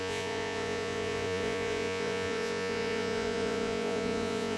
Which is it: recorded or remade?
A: remade